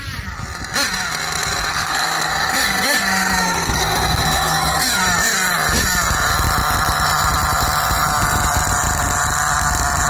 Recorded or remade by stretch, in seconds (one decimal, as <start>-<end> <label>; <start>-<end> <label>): 0.0-1.7 recorded; 1.7-5.0 remade; 5.0-10.1 recorded